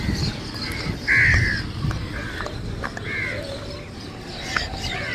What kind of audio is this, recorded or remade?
recorded